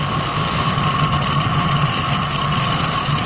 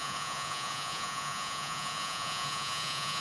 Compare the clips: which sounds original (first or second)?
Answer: first